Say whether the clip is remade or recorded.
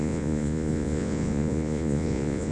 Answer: remade